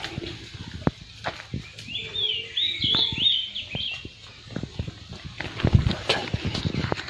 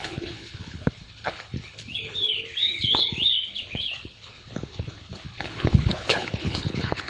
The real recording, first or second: first